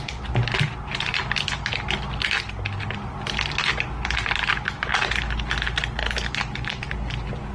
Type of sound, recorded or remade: recorded